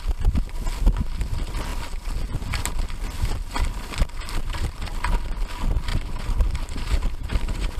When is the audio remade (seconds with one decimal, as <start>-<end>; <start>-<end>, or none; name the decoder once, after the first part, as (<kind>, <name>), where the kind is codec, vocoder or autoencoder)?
5.9-7.8 (vocoder, BigVGAN v2)

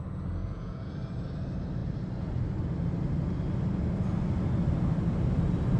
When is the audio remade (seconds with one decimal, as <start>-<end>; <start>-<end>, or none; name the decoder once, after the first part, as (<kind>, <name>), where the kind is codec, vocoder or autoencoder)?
0.4-0.9 (vocoder, Vocos)

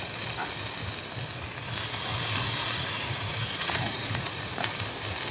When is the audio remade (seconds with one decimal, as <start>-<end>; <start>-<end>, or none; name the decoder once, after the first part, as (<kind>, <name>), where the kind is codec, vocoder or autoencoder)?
2.8-4.6 (vocoder, Vocos)

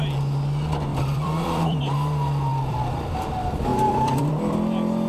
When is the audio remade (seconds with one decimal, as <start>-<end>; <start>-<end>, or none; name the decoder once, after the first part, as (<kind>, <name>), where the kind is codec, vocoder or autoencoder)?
0.9-1.8 (vocoder, BigVGAN v2); 2.5-3.2; 3.7-4.3

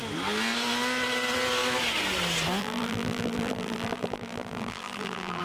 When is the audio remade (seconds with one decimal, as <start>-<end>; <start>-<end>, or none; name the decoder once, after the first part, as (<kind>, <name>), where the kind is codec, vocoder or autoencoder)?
2.6-5.4 (vocoder, BigVGAN v2)

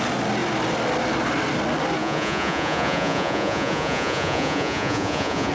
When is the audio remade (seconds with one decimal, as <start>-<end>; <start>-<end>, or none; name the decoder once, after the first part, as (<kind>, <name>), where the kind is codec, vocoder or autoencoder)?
2.0-5.5 (vocoder, Vocos)

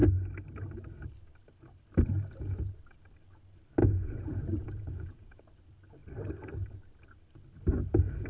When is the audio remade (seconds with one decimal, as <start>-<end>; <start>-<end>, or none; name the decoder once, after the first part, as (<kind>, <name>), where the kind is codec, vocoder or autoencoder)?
3.8-5.4 (vocoder, Vocos)